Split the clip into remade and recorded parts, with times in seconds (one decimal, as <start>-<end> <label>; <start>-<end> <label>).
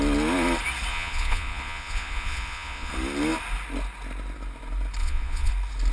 0.0-0.9 recorded; 0.9-2.9 remade; 2.9-5.0 recorded; 5.0-5.5 remade; 5.5-5.9 recorded